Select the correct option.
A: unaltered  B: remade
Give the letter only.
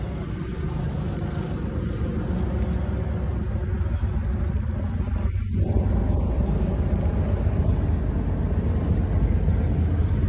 A